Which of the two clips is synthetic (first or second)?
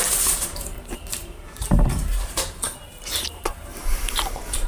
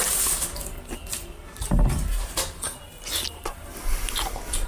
first